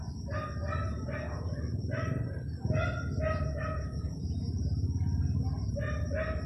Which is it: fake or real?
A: real